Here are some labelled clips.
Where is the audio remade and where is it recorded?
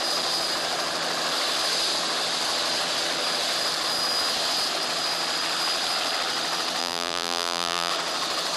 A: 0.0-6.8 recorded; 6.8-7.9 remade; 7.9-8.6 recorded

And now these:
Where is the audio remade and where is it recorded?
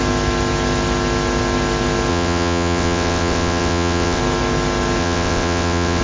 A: 0.0-2.1 recorded; 2.1-4.2 remade; 4.2-5.0 recorded; 5.0-6.0 remade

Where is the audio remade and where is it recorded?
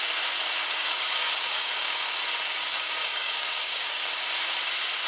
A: 0.0-0.8 recorded; 0.8-2.2 remade; 2.2-2.6 recorded; 2.6-4.1 remade; 4.1-5.1 recorded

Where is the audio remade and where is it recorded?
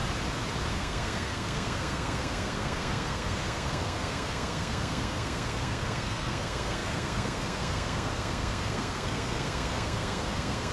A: 0.0-0.7 recorded; 0.7-10.7 remade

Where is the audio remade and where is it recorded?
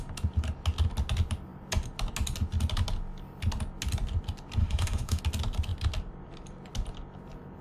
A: 0.0-4.6 recorded; 4.6-5.2 remade; 5.2-7.6 recorded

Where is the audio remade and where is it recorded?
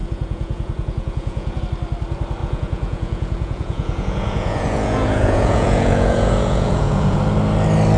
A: 0.0-1.6 remade; 1.6-2.4 recorded; 2.4-7.2 remade; 7.2-8.0 recorded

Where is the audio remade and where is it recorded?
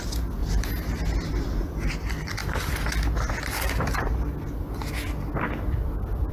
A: 0.0-0.4 recorded; 0.4-1.9 remade; 1.9-6.3 recorded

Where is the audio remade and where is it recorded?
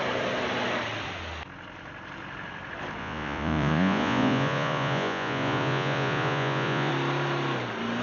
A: 0.0-3.0 recorded; 3.0-6.9 remade; 6.9-8.0 recorded